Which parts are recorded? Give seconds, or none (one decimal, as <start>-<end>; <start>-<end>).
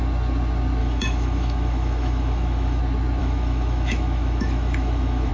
0.0-0.8; 2.8-3.2